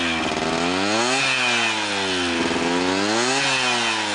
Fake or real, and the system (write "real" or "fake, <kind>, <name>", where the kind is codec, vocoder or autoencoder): real